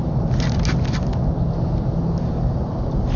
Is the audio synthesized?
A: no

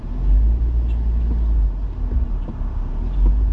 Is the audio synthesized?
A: no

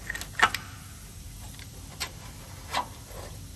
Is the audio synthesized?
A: no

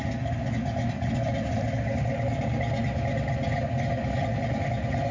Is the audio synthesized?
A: no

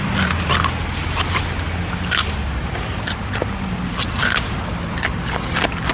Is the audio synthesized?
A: no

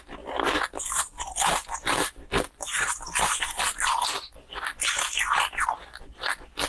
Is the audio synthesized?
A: no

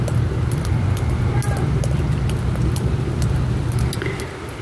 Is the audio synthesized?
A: no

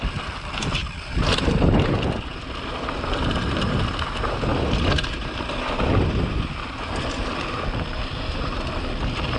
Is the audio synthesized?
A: no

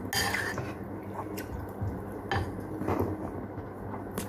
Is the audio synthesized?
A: no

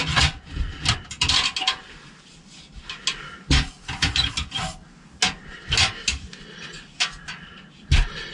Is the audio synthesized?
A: no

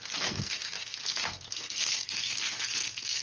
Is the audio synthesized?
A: yes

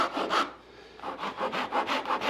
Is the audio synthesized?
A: yes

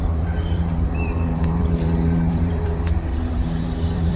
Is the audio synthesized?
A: yes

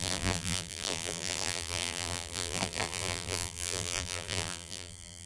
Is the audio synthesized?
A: yes